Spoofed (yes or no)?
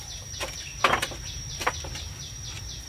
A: yes